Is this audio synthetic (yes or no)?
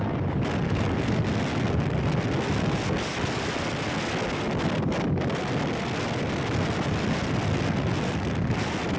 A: no